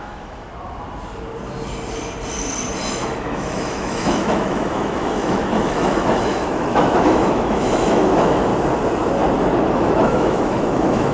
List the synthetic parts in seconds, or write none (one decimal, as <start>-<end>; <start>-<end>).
0.0-0.5; 2.9-8.5; 9.7-11.1